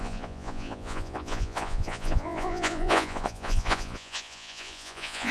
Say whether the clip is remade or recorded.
remade